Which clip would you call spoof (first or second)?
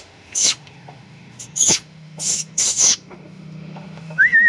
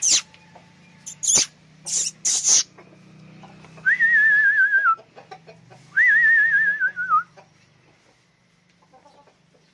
first